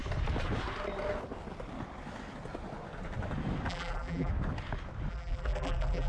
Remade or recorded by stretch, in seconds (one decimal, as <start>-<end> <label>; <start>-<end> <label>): 0.0-3.7 recorded; 3.7-4.3 remade; 4.3-5.1 recorded; 5.1-6.1 remade